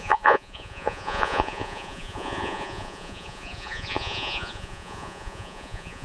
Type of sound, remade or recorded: remade